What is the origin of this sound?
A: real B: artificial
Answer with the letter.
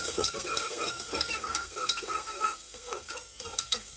B